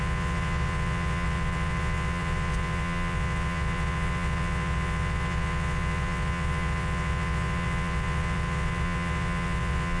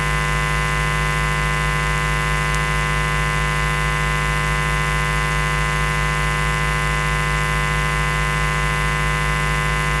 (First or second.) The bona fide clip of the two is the second